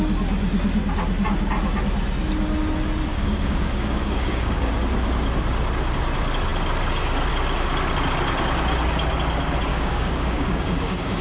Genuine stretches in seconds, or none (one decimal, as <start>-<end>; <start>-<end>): 0.0-3.1; 4.7-9.7